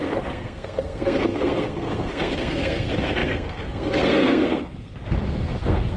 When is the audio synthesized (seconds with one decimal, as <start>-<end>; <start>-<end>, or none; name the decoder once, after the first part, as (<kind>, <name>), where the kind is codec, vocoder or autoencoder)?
0.0-6.0 (codec, SNAC)